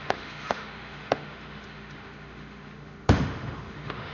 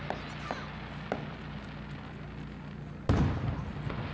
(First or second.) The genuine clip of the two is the second